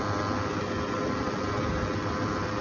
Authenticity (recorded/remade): recorded